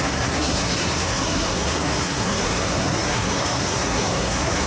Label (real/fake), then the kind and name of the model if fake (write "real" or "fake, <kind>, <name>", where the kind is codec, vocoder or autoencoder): fake, codec, SNAC